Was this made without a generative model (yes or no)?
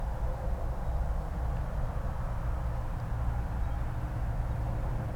yes